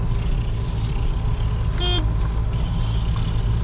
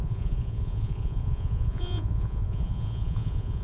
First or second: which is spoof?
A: second